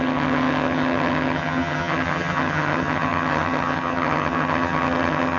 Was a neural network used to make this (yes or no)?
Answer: yes